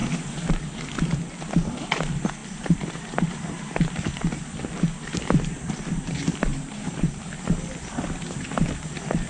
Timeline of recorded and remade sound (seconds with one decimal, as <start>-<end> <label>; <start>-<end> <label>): 0.0-0.5 remade; 0.5-2.4 recorded; 2.4-3.9 remade; 3.9-6.5 recorded; 6.5-7.3 remade; 7.3-9.3 recorded

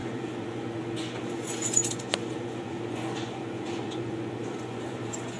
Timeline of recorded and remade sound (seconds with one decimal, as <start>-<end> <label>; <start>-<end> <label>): 0.0-5.4 remade

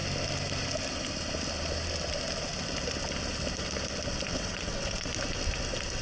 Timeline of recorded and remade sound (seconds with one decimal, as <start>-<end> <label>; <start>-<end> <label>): 0.0-4.3 recorded; 4.3-5.1 remade; 5.1-6.0 recorded

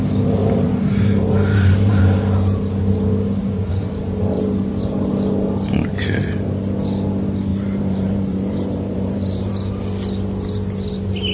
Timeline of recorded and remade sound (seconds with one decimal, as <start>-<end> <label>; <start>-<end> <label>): 0.0-0.4 recorded; 0.4-2.0 remade; 2.0-3.7 recorded; 3.7-4.7 remade; 4.7-7.5 recorded; 7.5-9.5 remade; 9.5-11.3 recorded

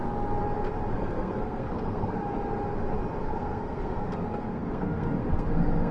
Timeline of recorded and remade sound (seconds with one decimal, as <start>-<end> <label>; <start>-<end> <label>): 0.0-0.9 recorded; 0.9-2.2 remade; 2.2-3.2 recorded; 3.2-5.9 remade

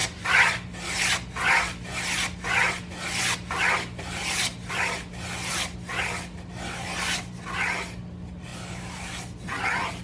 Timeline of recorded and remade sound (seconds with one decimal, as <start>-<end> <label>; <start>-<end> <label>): 0.0-10.0 recorded

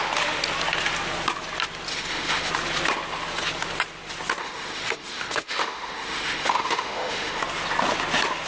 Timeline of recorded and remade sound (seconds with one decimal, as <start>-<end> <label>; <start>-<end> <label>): 0.0-1.9 recorded; 1.9-2.5 remade; 2.5-4.4 recorded; 4.4-7.4 remade; 7.4-8.5 recorded